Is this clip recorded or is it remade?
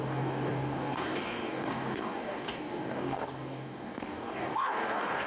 remade